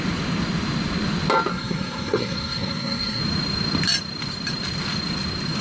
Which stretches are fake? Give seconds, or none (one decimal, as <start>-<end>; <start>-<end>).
1.5-3.2